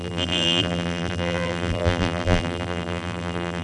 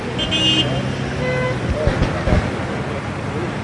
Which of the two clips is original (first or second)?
second